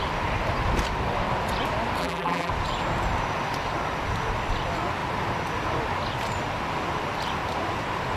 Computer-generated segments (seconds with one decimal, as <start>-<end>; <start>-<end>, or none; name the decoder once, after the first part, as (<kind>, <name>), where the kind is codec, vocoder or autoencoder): 2.0-2.5 (vocoder, BigVGAN v2)